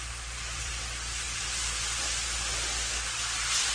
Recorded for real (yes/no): no